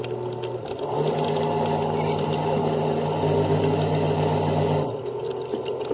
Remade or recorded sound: recorded